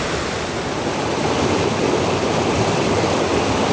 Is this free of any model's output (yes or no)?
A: yes